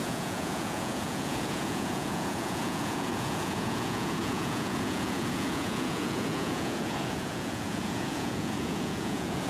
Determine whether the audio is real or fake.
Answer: fake